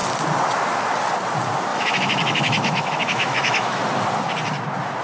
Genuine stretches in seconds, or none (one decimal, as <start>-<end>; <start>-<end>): 0.0-1.7; 3.8-5.0

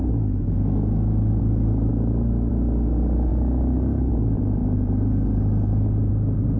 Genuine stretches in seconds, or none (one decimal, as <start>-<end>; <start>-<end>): 1.4-1.9; 2.5-6.6

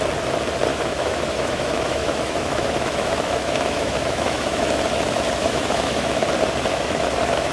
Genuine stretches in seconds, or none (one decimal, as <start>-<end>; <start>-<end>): 0.0-0.7; 4.8-5.4; 6.2-6.7

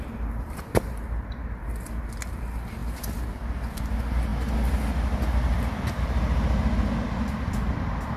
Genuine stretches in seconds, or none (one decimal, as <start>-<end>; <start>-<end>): 0.0-8.2

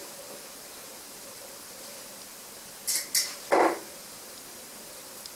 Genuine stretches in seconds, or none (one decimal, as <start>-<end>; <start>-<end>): 0.0-5.4

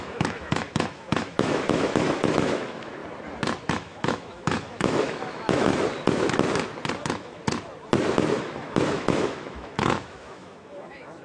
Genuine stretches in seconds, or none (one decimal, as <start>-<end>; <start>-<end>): 3.0-3.7; 5.7-7.0; 7.4-8.4